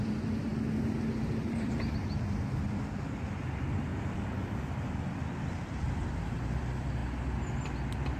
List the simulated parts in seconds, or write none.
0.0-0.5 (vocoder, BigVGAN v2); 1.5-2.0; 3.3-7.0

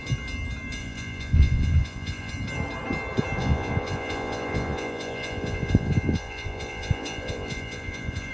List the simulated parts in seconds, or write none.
0.8-2.3 (vocoder, Vocos); 3.4-8.3